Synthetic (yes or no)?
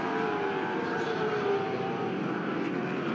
no